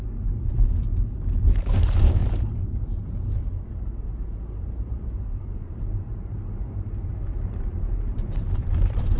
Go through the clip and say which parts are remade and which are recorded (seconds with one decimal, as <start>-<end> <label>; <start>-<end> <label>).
0.0-0.9 remade; 0.9-1.8 recorded; 1.8-9.2 remade